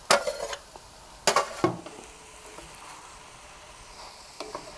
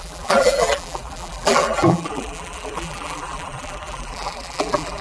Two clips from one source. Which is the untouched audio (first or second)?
first